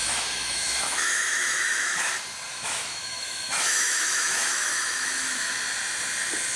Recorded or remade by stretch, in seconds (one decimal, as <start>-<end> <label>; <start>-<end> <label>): 0.0-2.1 remade; 2.1-2.5 recorded; 2.5-5.5 remade; 5.5-6.6 recorded